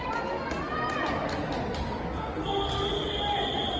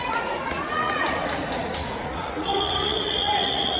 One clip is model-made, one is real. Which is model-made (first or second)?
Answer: second